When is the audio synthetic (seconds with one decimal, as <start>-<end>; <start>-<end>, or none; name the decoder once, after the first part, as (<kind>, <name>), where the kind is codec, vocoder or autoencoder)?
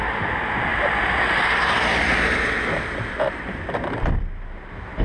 none